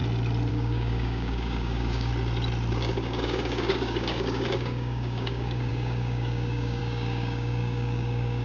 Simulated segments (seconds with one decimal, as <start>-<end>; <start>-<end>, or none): 0.5-2.1; 2.7-8.4